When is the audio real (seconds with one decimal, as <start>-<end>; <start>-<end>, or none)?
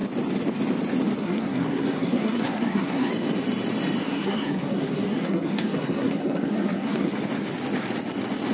0.0-1.2; 3.1-4.0; 7.2-8.5